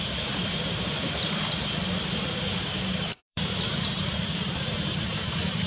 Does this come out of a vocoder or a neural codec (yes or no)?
yes